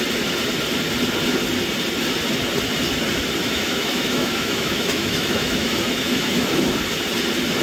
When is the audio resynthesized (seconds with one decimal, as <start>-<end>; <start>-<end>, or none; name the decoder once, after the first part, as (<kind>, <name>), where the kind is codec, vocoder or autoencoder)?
3.4-6.7 (autoencoder, DAC-VAE)